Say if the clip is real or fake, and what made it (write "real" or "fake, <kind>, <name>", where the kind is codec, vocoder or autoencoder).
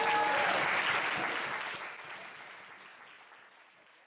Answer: real